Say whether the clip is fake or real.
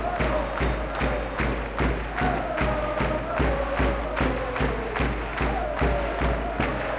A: real